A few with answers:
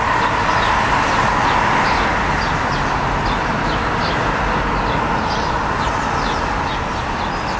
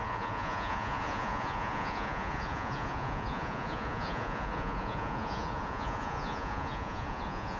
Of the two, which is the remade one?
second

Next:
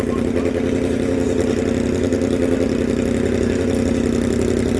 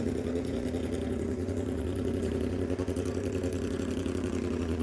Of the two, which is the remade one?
second